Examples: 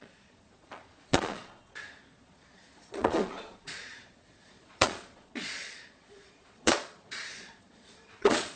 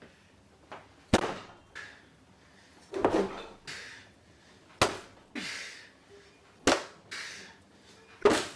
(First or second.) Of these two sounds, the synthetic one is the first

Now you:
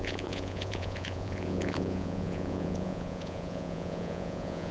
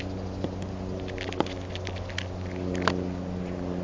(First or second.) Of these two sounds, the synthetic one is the first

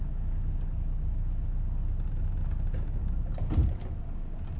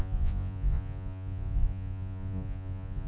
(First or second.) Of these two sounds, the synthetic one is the second